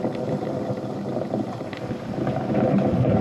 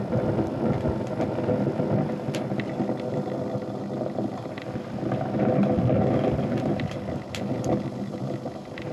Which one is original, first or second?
second